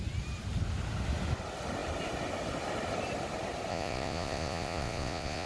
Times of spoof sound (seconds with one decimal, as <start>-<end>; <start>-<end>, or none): 3.7-5.5